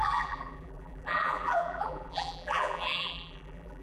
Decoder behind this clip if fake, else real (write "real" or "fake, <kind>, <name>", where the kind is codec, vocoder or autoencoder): fake, vocoder, BigVGAN v2